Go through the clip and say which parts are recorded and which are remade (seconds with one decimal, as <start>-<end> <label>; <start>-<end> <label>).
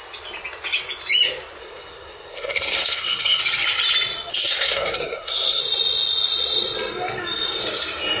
0.0-1.6 recorded; 1.6-3.4 remade; 3.4-4.3 recorded; 4.3-5.6 remade; 5.6-8.2 recorded